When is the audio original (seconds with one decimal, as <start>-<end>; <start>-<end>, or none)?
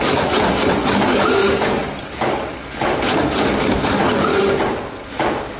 0.0-0.8; 3.6-5.6